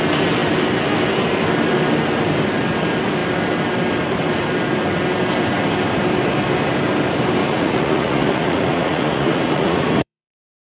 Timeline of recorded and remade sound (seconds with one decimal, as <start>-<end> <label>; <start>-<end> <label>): 0.0-7.4 recorded; 7.4-10.8 remade